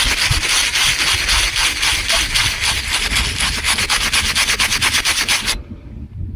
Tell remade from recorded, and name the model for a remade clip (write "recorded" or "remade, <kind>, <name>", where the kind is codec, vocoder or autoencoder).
recorded